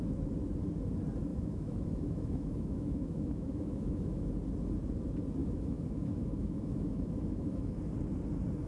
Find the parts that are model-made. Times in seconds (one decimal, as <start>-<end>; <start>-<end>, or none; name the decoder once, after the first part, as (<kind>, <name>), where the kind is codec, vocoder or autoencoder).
1.3-4.3 (autoencoder, DAC-VAE); 5.4-7.8